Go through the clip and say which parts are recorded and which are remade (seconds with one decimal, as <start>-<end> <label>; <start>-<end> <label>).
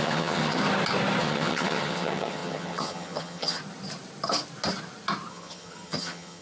0.0-0.6 remade; 0.6-1.2 recorded; 1.2-3.6 remade; 3.6-5.3 recorded; 5.3-6.4 remade